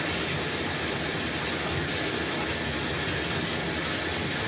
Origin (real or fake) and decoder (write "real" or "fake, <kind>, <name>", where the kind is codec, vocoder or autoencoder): real